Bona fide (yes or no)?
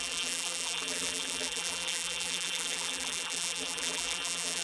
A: no